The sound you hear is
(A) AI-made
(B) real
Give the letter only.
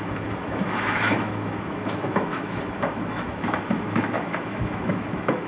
A